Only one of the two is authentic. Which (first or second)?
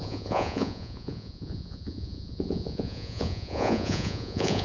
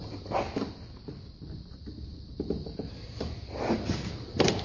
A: second